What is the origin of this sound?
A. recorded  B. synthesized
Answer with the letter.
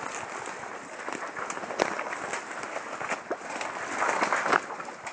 A